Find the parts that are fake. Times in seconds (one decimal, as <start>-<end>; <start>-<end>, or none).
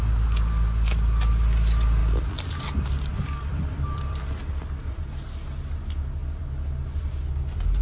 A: 2.0-2.6; 3.1-4.4; 6.2-7.0